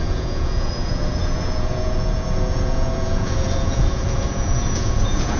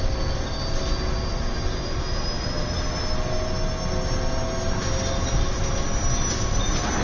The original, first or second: second